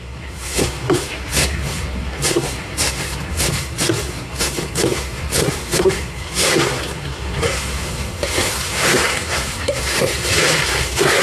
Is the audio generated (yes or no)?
yes